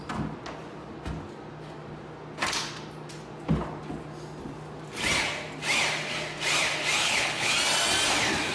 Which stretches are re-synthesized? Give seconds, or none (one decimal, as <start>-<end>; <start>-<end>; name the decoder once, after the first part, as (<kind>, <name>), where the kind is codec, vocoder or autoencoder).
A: 7.0-7.5 (codec, HILCodec)